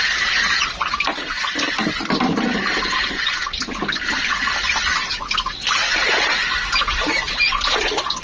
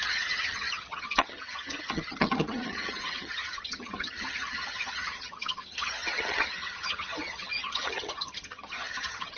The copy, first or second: second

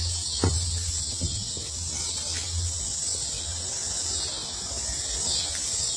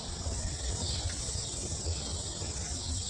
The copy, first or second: second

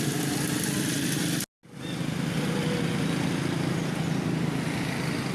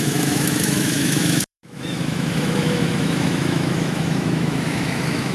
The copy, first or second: second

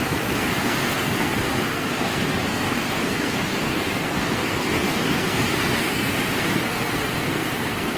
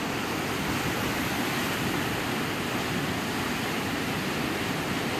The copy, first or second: first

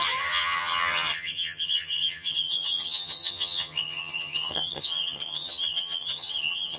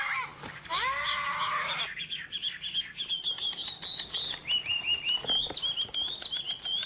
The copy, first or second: first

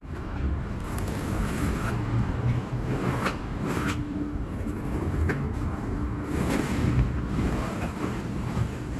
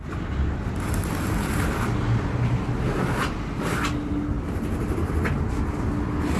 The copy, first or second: first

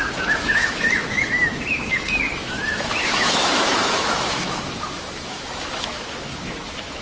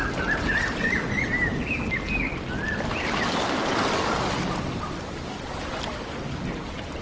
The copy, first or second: first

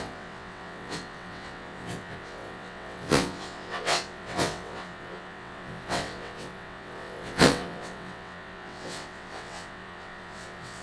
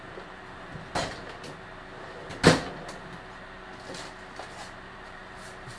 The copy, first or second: first